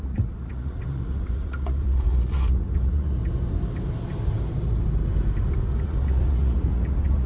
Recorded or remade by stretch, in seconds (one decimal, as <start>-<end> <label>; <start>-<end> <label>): 0.0-3.2 remade; 3.2-5.8 recorded; 5.8-7.3 remade